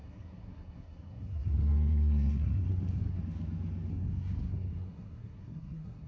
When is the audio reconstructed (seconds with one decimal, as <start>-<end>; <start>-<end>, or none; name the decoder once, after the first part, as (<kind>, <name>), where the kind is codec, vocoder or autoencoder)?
0.0-3.2 (codec, SNAC); 3.9-6.1